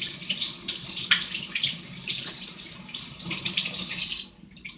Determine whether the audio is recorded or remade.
remade